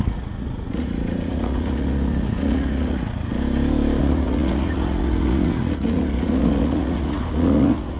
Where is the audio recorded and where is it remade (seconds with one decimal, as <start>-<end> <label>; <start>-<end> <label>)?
0.0-3.3 remade; 3.3-4.0 recorded; 4.0-8.0 remade